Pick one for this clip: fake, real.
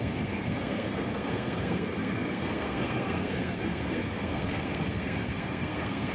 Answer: fake